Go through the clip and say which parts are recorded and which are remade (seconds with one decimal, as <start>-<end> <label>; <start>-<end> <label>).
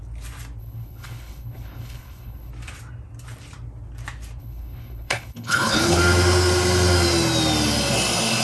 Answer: 0.0-0.6 recorded; 0.6-2.5 remade; 2.5-4.4 recorded; 4.4-6.0 remade; 6.0-8.4 recorded